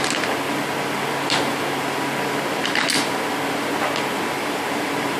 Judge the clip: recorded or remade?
recorded